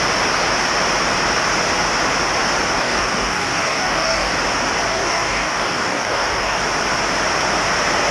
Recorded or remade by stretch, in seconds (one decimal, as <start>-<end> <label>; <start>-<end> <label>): 0.0-2.8 recorded; 2.8-4.3 remade; 4.3-4.9 recorded; 4.9-6.6 remade; 6.6-8.1 recorded